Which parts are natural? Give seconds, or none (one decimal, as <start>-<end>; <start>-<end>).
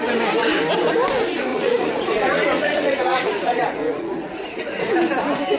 0.0-1.5; 4.9-5.6